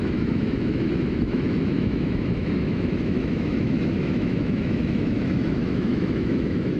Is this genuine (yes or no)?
no